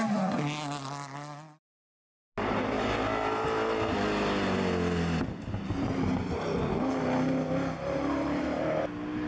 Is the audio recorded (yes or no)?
yes